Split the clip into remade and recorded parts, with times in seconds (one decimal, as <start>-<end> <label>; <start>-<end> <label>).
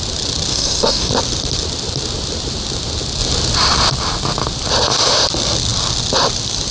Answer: 0.0-0.5 recorded; 0.5-1.1 remade; 1.1-6.7 recorded